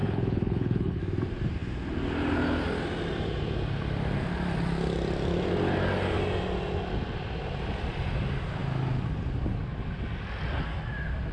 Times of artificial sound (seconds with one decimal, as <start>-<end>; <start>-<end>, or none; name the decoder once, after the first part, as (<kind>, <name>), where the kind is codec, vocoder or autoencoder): 0.0-1.0 (codec, HILCodec)